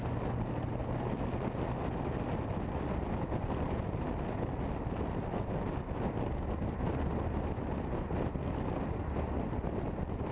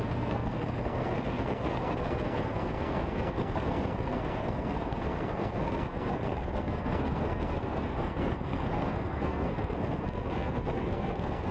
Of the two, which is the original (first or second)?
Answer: first